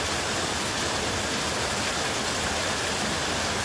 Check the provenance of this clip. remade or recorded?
recorded